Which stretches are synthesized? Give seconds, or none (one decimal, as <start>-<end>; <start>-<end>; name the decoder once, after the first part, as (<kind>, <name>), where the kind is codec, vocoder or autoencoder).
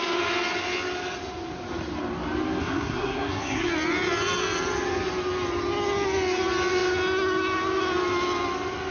2.6-3.7 (codec, SNAC)